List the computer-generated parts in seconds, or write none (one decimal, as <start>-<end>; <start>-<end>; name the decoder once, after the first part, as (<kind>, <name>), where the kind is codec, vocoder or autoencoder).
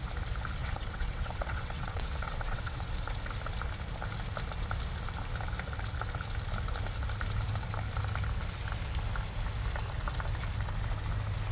0.6-2.9 (vocoder, WaveNeXt)